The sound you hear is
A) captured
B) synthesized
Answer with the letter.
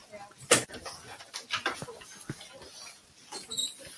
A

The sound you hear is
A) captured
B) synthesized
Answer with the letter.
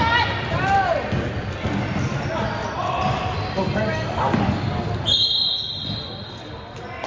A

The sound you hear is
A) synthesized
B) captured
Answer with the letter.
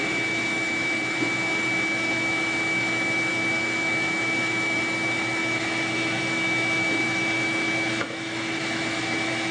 A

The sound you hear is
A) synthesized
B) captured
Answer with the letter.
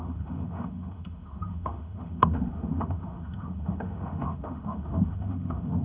A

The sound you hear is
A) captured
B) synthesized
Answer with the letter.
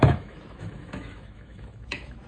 B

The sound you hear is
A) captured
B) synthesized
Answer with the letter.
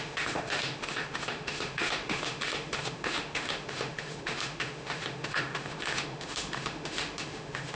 B